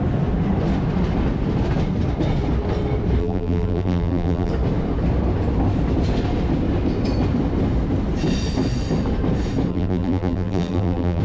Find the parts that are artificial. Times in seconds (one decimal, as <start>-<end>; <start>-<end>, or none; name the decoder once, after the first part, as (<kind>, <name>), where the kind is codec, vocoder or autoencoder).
3.2-4.5 (vocoder, BigVGAN v2); 9.7-11.2